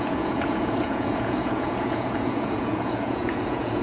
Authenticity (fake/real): fake